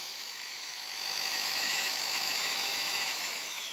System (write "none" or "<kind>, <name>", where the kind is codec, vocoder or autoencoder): autoencoder, DAC-VAE